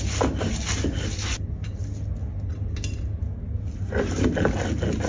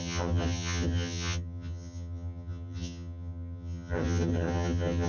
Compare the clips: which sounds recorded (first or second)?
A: first